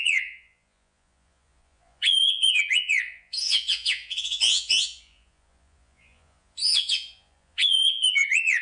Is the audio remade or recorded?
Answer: remade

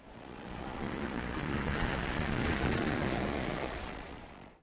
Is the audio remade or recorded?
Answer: remade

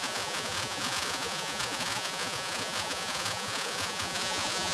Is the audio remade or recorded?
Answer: remade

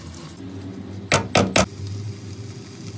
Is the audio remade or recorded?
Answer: recorded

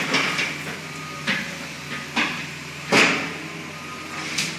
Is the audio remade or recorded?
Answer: recorded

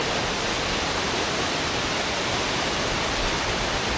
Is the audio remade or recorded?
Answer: recorded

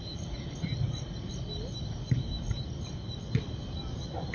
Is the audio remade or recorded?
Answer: recorded